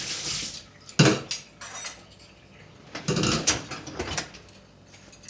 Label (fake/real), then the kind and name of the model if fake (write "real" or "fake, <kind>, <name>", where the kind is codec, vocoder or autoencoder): real